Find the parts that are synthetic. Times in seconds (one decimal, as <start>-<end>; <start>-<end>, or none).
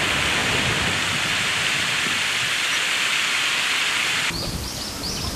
0.4-1.5; 3.8-5.4